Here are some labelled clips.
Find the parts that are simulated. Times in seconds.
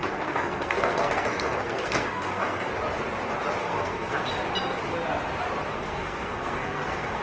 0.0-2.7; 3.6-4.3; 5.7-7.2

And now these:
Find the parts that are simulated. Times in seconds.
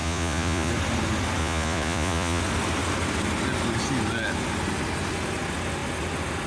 0.0-0.7; 1.4-2.4